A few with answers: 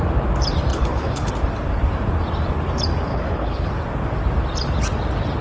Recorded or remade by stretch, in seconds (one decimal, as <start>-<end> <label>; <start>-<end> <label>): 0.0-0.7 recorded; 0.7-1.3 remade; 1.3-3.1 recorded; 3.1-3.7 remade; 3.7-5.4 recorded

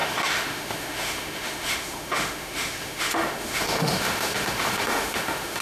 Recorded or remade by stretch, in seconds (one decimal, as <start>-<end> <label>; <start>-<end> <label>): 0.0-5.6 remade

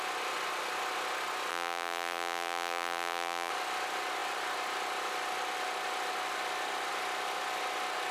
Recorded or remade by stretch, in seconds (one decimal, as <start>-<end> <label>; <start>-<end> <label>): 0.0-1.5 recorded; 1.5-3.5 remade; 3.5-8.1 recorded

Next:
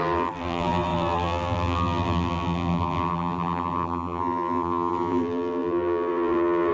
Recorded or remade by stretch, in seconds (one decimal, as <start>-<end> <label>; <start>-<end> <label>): 0.0-6.7 remade